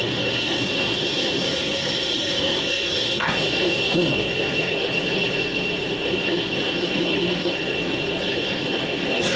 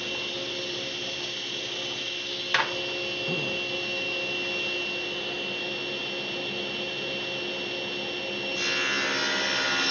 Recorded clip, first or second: second